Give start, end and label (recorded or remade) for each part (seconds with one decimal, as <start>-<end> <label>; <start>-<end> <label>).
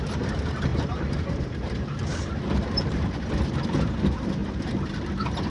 0.0-5.5 remade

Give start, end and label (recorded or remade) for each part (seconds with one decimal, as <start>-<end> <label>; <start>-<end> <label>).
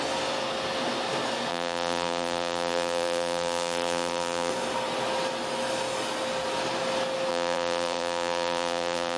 0.0-1.5 recorded; 1.5-4.5 remade; 4.5-7.3 recorded; 7.3-9.2 remade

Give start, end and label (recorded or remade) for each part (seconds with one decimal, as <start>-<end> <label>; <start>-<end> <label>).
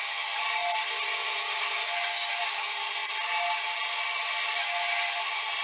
0.0-5.6 recorded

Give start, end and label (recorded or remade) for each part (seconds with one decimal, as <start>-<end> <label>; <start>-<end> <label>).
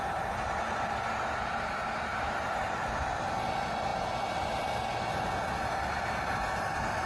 0.0-2.1 recorded; 2.1-2.9 remade; 2.9-7.1 recorded